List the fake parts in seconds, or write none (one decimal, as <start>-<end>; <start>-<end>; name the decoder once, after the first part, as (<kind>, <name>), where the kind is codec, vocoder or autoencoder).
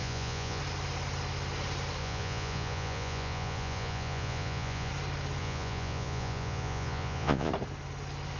0.0-0.6 (vocoder, Vocos); 2.0-4.9; 5.4-7.5